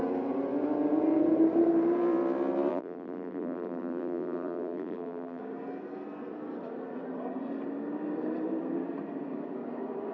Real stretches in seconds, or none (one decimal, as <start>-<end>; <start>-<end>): 0.0-2.7; 5.4-10.1